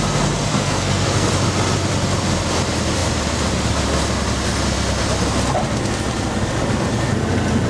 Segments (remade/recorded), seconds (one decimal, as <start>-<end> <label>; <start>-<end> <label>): 0.0-0.5 recorded; 0.5-1.3 remade; 1.3-7.7 recorded